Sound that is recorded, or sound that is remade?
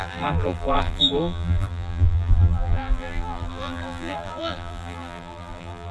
remade